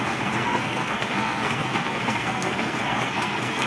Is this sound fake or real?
fake